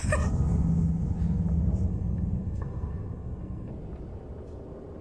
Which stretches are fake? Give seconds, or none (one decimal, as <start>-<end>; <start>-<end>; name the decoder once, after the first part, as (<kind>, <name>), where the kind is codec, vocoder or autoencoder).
1.9-3.7 (codec, SNAC)

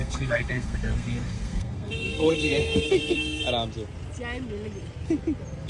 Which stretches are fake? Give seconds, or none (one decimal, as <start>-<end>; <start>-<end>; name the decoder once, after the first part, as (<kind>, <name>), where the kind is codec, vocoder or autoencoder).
0.0-3.4 (codec, SNAC)

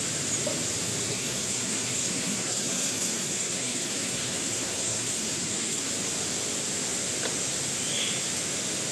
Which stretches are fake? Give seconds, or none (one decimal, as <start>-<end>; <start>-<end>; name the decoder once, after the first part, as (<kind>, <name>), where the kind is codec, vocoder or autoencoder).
1.0-5.9 (codec, SNAC)

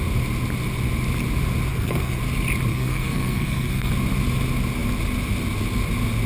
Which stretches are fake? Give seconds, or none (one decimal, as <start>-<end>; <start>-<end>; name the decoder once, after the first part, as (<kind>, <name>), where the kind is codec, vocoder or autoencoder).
1.7-2.2 (codec, SNAC); 2.7-3.9

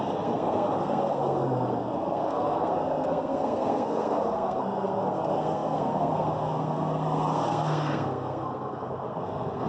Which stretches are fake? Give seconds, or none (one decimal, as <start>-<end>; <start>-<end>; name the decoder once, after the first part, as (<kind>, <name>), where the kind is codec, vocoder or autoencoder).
0.0-9.7 (codec, SNAC)